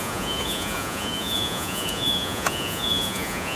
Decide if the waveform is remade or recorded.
remade